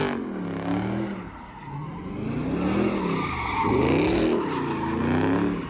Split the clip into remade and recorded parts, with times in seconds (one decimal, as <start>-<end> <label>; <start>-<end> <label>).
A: 0.0-5.7 recorded